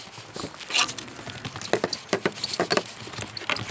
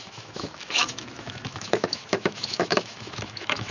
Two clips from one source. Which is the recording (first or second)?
first